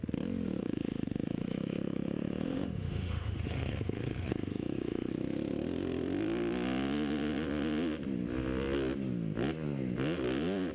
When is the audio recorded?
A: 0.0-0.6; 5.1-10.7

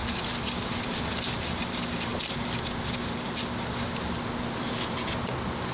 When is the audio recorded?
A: 0.0-5.7

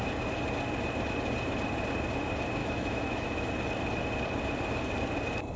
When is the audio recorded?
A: 0.0-2.6; 3.5-5.6

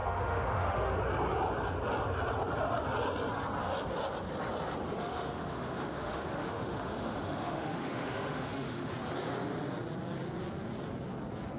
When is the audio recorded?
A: 0.9-5.0; 8.9-11.6

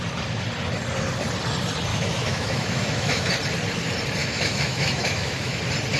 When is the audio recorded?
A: 0.0-1.9; 3.3-4.2; 5.6-6.0

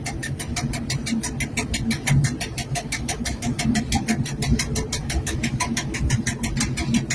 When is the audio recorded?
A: 0.0-2.7; 3.6-5.0; 6.1-7.1